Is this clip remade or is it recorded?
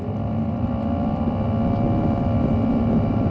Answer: recorded